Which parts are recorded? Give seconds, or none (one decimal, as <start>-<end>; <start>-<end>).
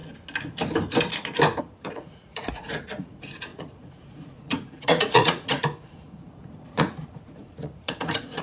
0.0-1.6